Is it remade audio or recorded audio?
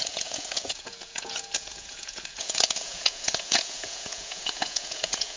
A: remade